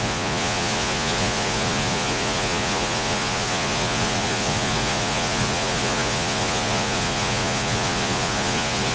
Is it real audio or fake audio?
fake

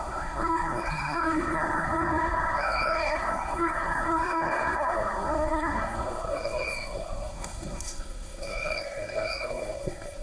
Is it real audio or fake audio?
fake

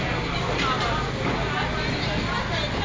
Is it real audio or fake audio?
real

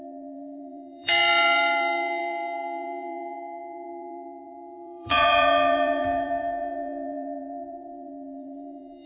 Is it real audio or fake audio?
fake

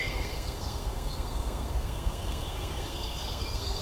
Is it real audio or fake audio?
fake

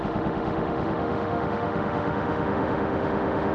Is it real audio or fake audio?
fake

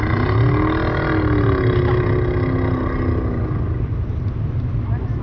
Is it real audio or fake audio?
real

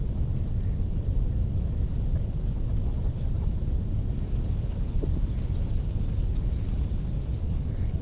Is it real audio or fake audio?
real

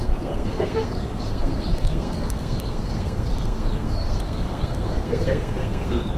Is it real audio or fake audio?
fake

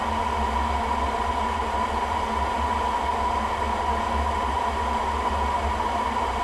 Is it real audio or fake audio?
real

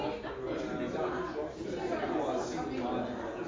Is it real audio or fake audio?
real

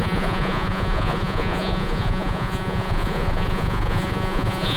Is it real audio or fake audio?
fake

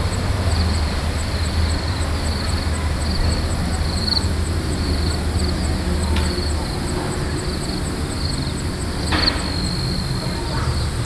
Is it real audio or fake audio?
real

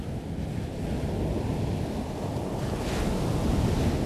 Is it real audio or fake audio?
real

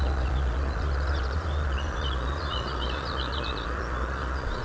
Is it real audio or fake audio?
fake